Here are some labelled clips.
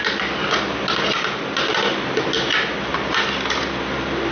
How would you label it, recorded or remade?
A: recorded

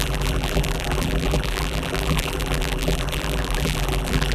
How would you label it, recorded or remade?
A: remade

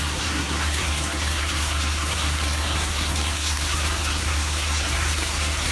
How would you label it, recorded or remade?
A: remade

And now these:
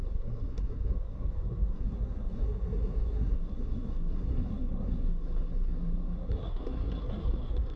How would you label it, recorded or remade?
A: remade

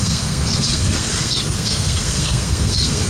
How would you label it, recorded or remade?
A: remade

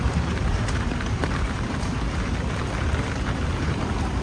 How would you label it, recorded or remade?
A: remade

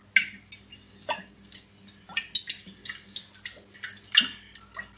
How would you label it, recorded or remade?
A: recorded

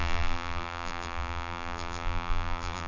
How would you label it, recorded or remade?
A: remade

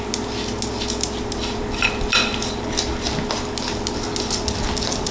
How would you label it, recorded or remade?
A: recorded